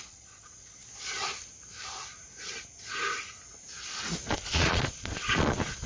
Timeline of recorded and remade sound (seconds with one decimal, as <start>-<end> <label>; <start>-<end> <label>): 0.0-0.8 remade; 0.8-4.3 recorded; 4.3-5.9 remade